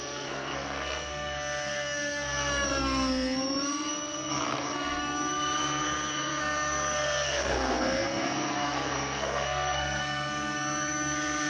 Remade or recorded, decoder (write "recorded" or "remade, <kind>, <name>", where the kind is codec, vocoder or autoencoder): remade, codec, SNAC